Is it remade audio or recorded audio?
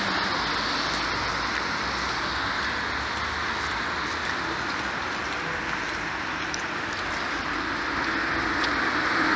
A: recorded